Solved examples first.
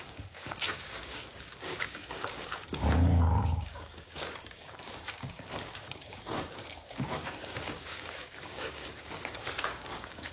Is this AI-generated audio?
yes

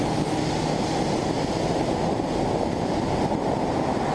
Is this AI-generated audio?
no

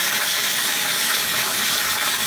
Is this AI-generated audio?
yes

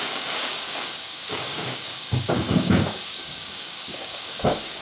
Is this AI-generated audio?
yes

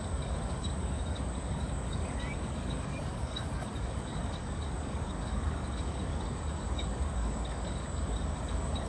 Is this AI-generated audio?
yes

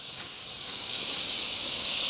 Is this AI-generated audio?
yes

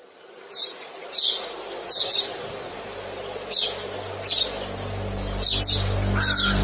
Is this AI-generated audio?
no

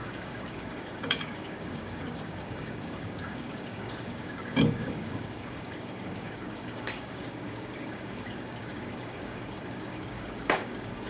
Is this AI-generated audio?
yes